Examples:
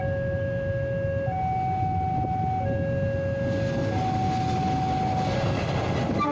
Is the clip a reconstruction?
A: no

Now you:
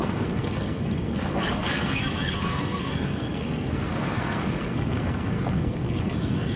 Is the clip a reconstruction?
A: yes